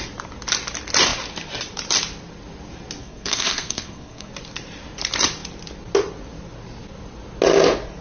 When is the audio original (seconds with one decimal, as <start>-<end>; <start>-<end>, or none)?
0.0-3.0; 4.3-8.0